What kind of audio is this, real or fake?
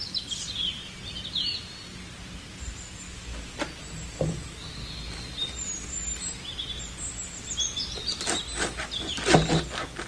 real